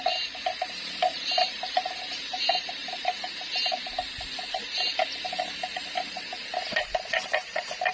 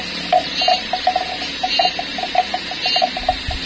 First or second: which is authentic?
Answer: second